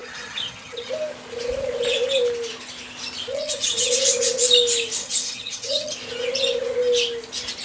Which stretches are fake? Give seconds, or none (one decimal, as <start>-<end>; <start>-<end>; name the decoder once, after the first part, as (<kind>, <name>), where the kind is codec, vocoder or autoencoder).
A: 0.0-0.9 (vocoder, HiFi-GAN); 3.3-3.9; 5.0-5.9